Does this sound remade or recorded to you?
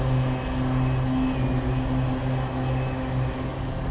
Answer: recorded